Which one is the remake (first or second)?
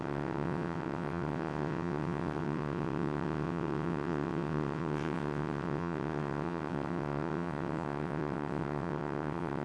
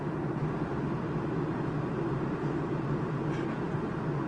first